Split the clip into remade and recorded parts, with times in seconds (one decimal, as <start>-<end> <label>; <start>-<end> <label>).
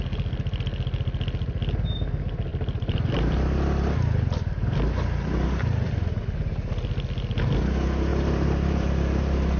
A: 0.0-2.5 recorded; 2.5-5.9 remade; 5.9-8.1 recorded; 8.1-9.6 remade